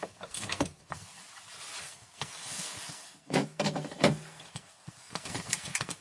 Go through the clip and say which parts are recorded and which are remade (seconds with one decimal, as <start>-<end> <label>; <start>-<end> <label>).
0.0-1.2 remade; 1.2-1.8 recorded; 1.8-6.0 remade